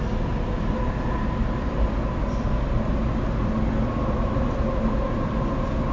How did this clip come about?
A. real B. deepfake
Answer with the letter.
A